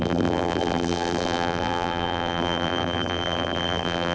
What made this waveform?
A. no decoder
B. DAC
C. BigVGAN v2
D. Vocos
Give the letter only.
C